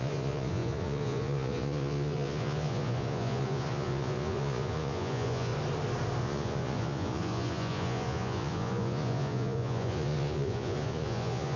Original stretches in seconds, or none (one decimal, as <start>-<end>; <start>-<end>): 5.5-6.2